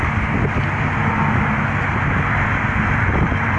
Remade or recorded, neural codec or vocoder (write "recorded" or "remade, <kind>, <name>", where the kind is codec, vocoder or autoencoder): recorded